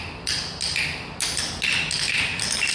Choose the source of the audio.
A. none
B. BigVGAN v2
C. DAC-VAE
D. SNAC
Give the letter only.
A